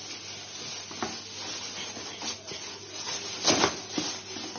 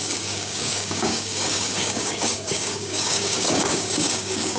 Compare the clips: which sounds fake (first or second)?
second